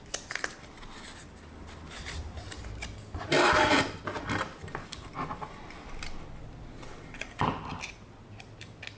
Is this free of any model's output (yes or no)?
yes